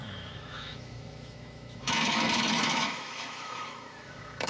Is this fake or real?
fake